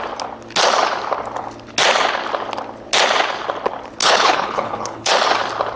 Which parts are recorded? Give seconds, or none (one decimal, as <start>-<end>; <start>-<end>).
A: 0.0-4.0; 5.1-5.8